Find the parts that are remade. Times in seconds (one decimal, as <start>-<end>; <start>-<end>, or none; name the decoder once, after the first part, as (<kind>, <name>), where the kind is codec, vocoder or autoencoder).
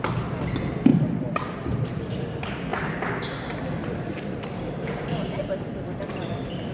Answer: 0.9-2.0 (vocoder, BigVGAN v2); 2.7-6.7